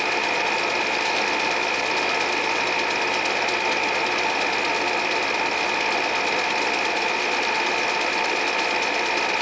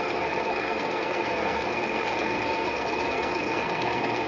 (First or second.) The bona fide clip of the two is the first